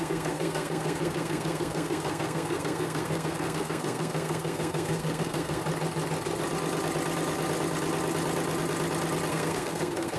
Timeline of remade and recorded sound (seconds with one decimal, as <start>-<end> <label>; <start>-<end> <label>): 0.0-5.6 remade; 5.6-9.3 recorded; 9.3-10.2 remade